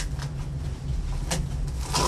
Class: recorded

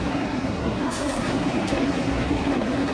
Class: remade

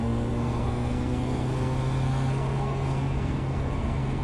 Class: remade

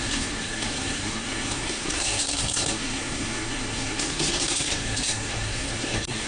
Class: remade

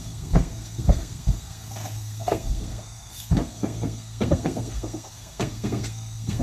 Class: remade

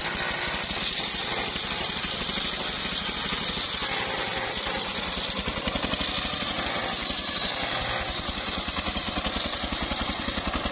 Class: recorded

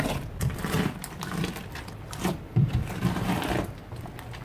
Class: recorded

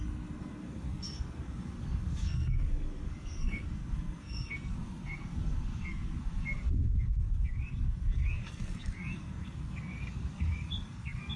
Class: remade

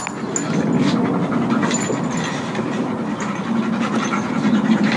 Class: recorded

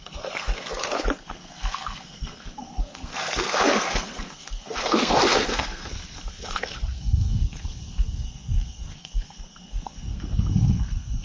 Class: remade